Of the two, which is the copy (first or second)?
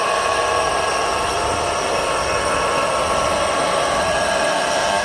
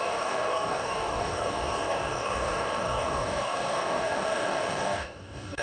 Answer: second